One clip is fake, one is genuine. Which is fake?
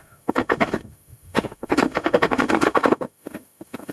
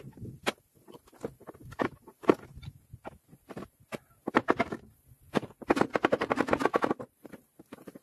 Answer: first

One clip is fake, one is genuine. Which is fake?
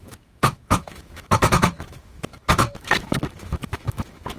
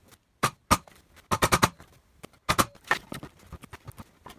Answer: first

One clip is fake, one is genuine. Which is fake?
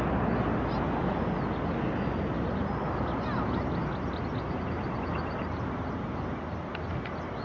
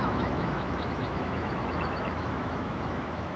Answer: second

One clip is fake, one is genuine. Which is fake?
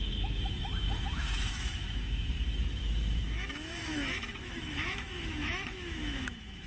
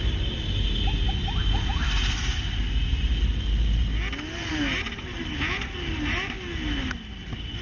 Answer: first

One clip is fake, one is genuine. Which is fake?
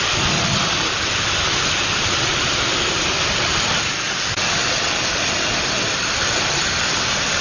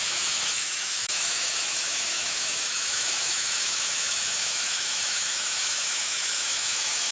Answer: second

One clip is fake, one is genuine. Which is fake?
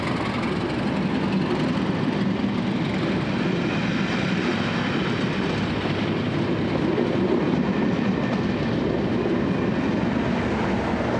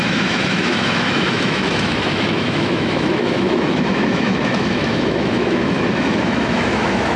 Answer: second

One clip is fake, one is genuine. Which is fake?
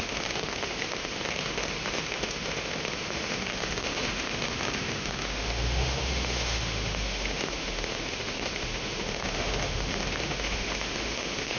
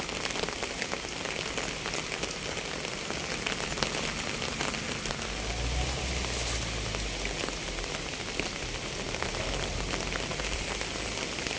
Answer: first